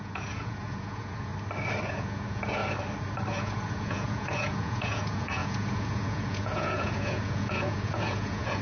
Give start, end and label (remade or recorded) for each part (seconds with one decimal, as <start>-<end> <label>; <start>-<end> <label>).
0.0-1.3 remade; 1.3-1.9 recorded; 1.9-2.6 remade; 2.6-3.3 recorded; 3.3-8.6 remade